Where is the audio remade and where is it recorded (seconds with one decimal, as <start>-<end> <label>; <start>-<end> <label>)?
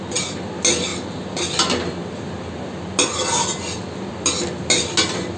0.0-5.4 recorded